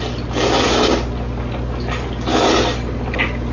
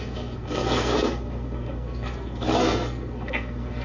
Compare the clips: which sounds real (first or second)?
first